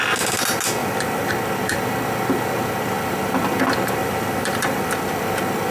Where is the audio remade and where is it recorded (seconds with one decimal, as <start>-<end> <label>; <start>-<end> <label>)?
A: 0.0-0.8 recorded; 0.8-1.3 remade; 1.3-4.0 recorded; 4.0-4.9 remade; 4.9-5.7 recorded